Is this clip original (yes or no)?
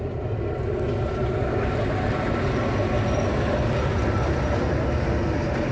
yes